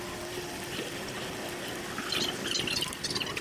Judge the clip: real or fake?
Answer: real